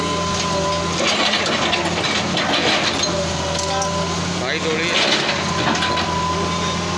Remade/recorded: recorded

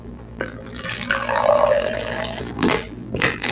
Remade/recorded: remade